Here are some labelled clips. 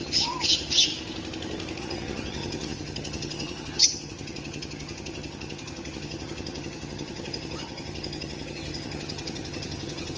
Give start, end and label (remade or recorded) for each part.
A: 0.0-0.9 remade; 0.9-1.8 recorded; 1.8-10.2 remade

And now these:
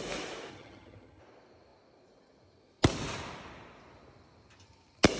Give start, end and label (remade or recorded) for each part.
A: 0.0-0.5 recorded; 0.5-1.2 remade; 1.2-5.2 recorded

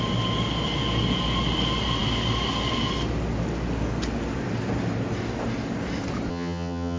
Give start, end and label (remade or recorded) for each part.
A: 0.0-6.3 recorded; 6.3-7.0 remade

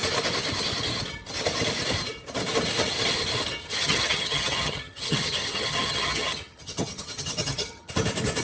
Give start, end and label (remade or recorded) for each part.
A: 0.0-3.6 recorded; 3.6-7.9 remade; 7.9-8.4 recorded

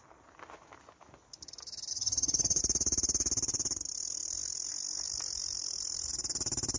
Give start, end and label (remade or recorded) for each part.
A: 0.0-1.9 recorded; 1.9-2.6 remade; 2.6-6.8 recorded